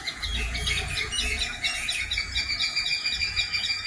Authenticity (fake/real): fake